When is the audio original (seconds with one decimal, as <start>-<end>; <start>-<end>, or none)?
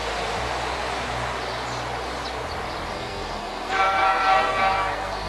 0.0-2.9